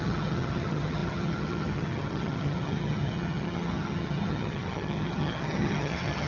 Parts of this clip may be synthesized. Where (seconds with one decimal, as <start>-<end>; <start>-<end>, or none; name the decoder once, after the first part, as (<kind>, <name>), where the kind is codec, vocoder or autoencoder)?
0.0-6.3 (vocoder, HiFi-GAN)